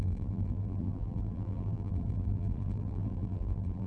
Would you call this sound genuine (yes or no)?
no